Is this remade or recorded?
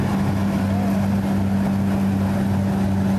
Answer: recorded